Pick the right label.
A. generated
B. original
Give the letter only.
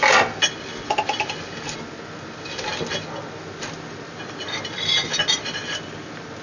B